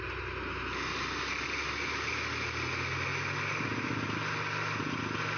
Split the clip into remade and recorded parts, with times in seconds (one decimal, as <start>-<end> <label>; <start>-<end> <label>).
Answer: 0.0-5.4 recorded